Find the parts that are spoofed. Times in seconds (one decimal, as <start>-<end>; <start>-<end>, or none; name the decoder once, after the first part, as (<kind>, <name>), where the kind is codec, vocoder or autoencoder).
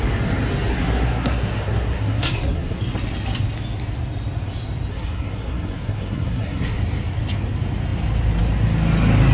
0.7-2.8 (codec, SNAC); 4.9-6.8